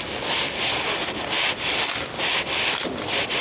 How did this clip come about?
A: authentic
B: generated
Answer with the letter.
A